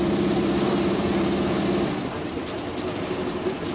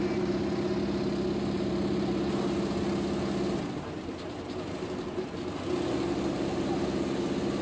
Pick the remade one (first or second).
first